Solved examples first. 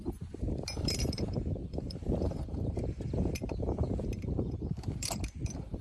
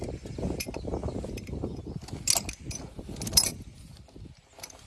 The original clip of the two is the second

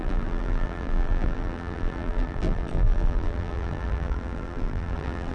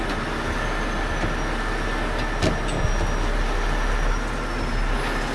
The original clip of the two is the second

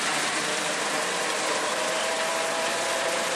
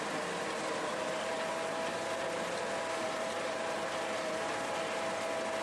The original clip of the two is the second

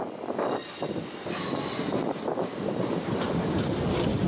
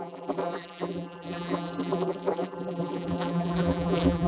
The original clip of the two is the first